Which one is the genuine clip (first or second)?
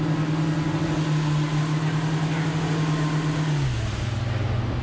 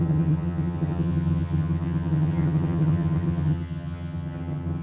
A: first